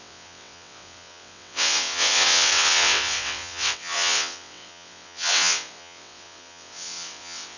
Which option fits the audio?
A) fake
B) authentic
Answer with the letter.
A